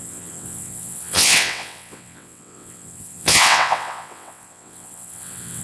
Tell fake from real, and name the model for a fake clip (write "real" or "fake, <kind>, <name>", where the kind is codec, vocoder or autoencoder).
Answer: fake, vocoder, WaveNeXt